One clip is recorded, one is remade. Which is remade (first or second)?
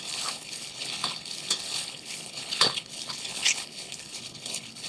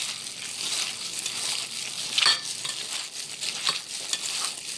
first